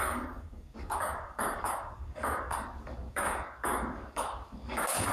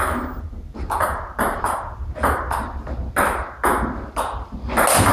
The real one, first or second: second